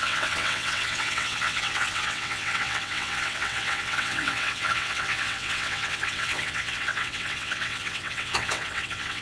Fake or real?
fake